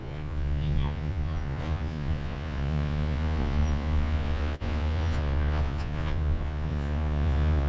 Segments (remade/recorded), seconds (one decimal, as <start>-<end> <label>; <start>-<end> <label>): 0.0-7.7 remade